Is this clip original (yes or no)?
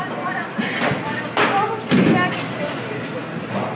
yes